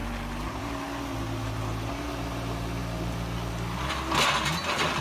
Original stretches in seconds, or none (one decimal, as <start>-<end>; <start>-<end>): 0.0-5.0